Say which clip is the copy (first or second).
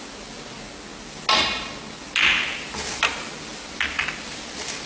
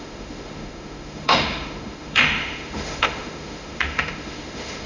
second